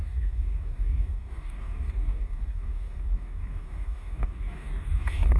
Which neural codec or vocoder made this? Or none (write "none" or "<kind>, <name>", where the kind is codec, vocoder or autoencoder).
codec, DAC